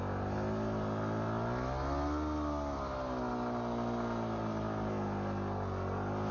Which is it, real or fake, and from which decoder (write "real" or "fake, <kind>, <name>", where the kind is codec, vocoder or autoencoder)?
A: real